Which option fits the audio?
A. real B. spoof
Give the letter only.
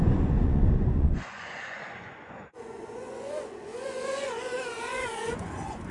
B